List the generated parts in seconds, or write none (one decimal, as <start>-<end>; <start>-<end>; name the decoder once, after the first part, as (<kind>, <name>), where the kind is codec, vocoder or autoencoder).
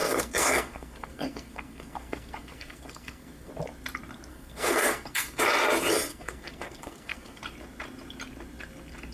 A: 0.0-3.5 (codec, SNAC); 4.3-5.4; 6.1-7.4